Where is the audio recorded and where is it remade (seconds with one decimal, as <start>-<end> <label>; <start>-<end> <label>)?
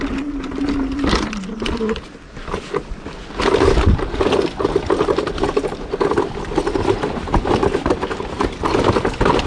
0.0-6.6 recorded; 6.6-9.5 remade